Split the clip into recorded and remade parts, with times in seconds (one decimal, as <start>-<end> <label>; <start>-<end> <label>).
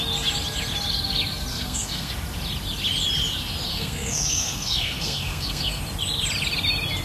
0.0-1.5 recorded; 1.5-2.1 remade; 2.1-3.7 recorded; 3.7-5.8 remade; 5.8-7.0 recorded